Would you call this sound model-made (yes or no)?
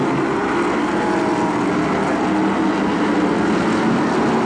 no